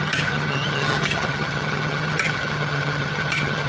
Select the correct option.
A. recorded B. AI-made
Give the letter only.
B